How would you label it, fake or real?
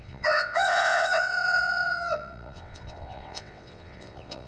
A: fake